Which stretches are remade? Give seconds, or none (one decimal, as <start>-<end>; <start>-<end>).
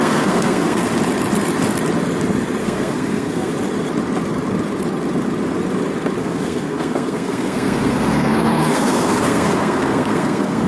0.0-0.9; 2.6-3.5; 6.2-10.7